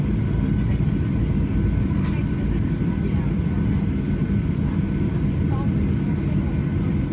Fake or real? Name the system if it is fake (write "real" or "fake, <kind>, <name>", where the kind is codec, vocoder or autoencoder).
real